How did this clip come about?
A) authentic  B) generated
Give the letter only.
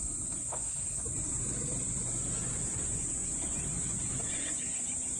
B